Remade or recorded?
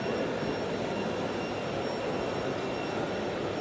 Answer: recorded